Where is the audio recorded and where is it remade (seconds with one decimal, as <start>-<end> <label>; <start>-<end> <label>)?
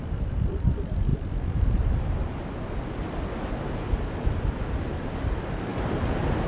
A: 0.0-5.7 recorded; 5.7-6.5 remade